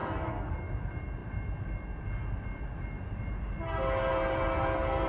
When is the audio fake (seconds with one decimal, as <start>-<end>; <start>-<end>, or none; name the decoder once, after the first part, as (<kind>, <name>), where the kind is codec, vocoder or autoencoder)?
0.0-0.5 (autoencoder, DAC-VAE)